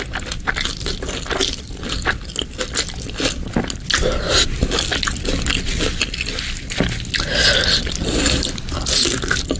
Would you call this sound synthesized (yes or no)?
no